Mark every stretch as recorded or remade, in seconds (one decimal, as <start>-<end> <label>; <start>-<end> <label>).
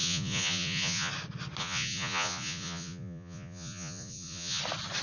0.0-1.1 remade; 1.1-1.6 recorded; 1.6-4.6 remade; 4.6-5.0 recorded